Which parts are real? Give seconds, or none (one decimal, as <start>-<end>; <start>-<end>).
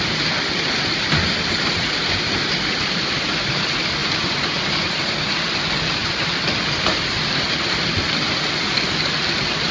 0.0-4.0; 5.0-9.7